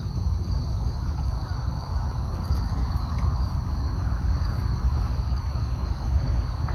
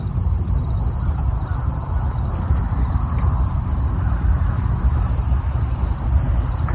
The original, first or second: second